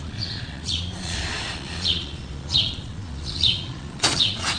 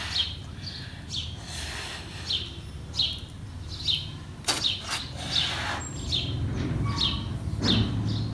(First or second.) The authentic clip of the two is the second